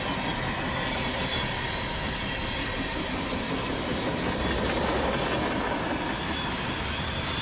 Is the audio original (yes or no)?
yes